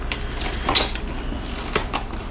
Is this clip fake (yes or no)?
no